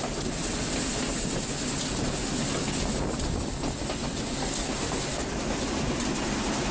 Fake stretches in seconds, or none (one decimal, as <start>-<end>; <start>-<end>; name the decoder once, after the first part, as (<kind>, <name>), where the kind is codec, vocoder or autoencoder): none